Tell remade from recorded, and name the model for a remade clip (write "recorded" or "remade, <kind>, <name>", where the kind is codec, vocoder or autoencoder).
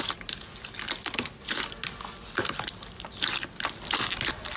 recorded